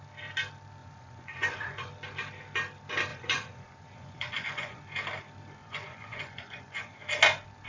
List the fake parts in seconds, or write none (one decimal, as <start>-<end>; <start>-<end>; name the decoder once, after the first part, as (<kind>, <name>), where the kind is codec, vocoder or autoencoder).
0.8-1.9 (vocoder, Vocos); 3.1-4.8; 5.6-7.0